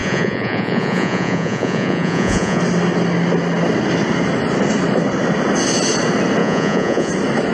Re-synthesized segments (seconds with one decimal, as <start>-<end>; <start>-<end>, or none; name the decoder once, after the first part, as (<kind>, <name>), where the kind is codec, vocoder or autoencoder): 0.0-2.6 (vocoder, Vocos); 6.4-7.1